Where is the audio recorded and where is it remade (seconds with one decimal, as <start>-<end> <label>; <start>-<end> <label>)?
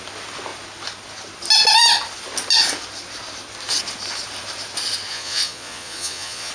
0.0-5.1 recorded; 5.1-6.5 remade